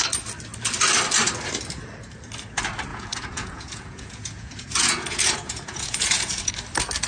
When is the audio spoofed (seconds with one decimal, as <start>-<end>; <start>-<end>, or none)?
2.9-6.5